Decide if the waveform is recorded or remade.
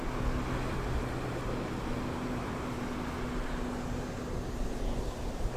recorded